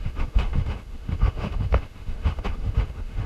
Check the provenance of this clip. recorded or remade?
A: remade